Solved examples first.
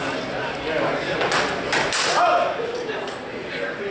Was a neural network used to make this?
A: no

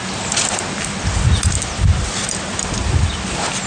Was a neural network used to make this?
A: no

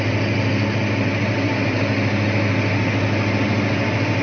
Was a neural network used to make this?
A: no